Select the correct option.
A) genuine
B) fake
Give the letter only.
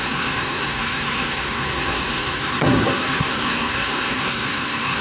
B